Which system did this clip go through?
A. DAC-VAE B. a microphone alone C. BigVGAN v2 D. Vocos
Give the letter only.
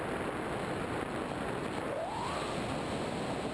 B